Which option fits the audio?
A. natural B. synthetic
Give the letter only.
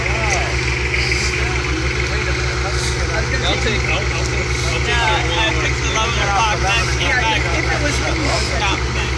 A